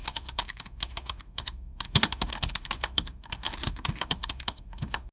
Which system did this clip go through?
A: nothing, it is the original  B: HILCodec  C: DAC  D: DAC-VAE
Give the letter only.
D